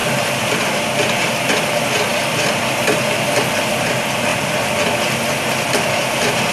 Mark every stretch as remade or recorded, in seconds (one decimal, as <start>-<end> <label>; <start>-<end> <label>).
0.0-6.5 recorded